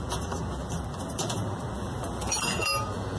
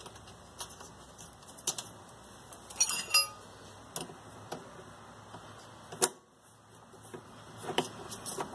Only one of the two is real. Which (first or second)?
second